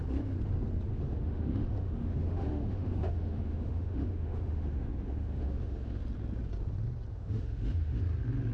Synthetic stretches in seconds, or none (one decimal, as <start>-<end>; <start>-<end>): 0.9-6.0; 7.1-8.0

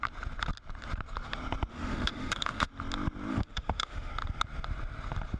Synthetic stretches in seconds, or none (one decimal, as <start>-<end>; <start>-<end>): 1.7-2.7; 3.3-4.1